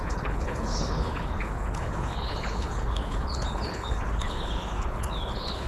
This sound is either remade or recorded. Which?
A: remade